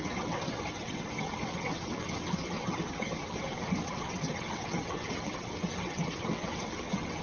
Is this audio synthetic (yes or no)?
yes